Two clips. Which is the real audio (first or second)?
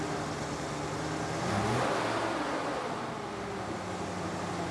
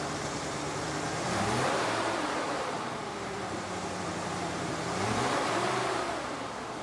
first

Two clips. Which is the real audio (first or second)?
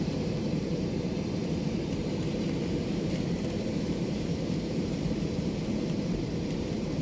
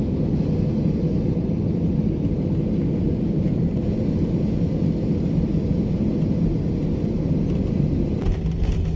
second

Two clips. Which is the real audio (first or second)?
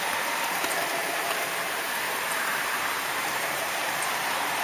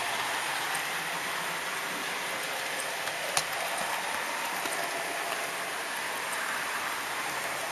second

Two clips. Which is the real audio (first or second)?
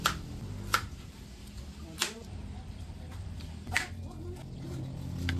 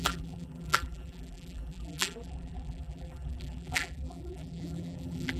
first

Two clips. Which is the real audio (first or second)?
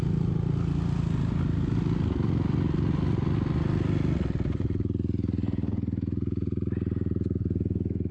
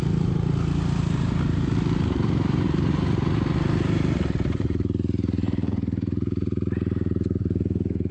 first